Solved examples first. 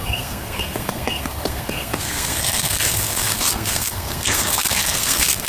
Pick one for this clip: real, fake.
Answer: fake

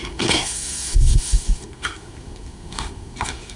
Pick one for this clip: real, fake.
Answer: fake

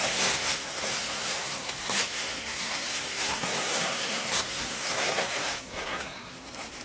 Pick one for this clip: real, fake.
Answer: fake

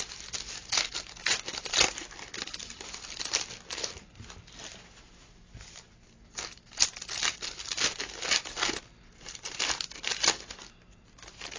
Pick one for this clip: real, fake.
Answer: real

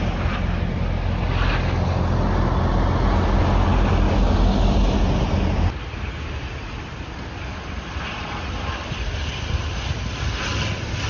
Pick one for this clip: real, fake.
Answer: real